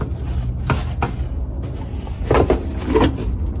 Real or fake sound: real